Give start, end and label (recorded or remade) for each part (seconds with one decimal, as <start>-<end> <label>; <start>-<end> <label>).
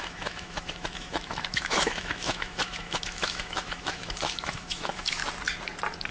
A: 0.0-5.2 remade; 5.2-6.1 recorded